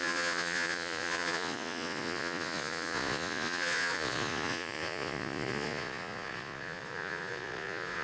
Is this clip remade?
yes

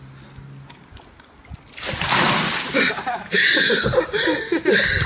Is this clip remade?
no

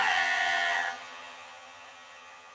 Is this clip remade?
yes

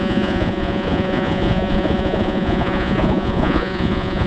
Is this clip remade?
yes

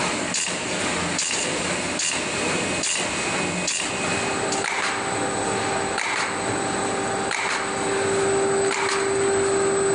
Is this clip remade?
no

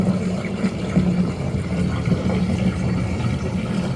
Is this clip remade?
no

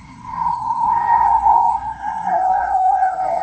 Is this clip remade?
yes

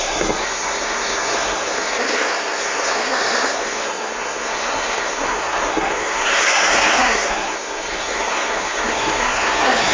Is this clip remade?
yes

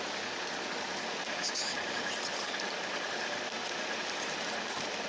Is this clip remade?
no